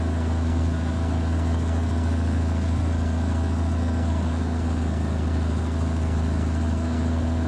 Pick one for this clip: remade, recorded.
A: remade